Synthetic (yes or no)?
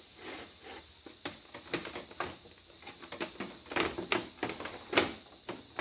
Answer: no